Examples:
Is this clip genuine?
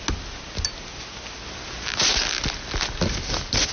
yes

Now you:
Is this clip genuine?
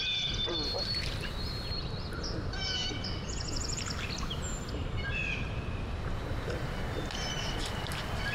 no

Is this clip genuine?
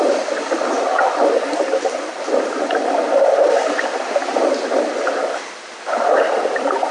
yes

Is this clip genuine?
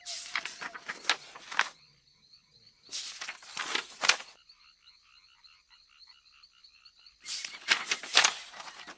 yes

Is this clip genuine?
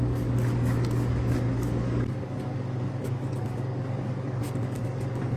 no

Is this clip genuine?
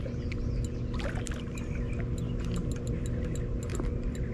yes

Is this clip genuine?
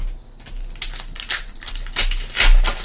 yes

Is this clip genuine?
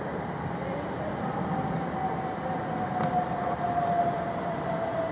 yes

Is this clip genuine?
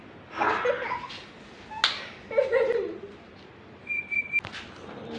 yes